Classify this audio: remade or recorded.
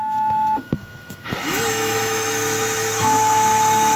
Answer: remade